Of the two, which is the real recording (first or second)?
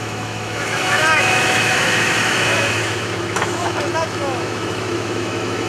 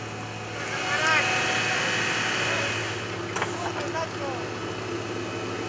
second